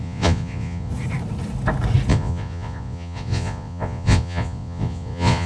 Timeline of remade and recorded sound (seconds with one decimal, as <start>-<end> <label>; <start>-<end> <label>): 0.0-0.9 remade; 0.9-2.1 recorded; 2.1-5.5 remade